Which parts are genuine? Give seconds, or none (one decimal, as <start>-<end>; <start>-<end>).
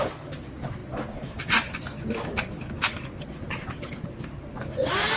0.0-5.2